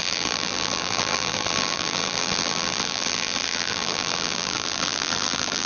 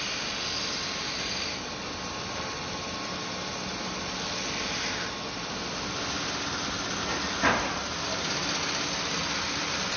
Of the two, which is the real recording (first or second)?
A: second